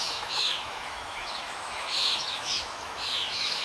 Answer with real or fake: fake